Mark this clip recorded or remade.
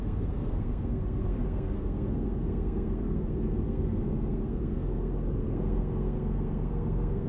remade